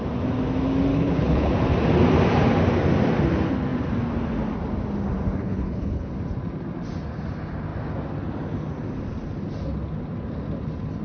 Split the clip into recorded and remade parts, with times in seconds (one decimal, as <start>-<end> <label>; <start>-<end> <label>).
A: 0.0-0.9 recorded; 0.9-1.5 remade; 1.5-5.4 recorded; 5.4-6.1 remade; 6.1-11.0 recorded